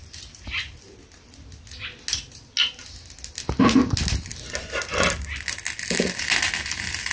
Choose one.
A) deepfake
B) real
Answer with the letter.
B